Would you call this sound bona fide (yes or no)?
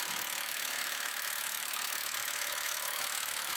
no